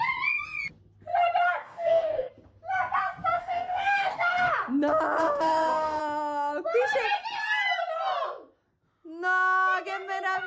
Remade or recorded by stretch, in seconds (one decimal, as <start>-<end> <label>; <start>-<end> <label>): 0.0-1.6 recorded; 1.6-2.3 remade; 2.3-3.4 recorded; 3.4-4.5 remade; 4.5-5.2 recorded; 5.2-6.0 remade; 6.0-10.5 recorded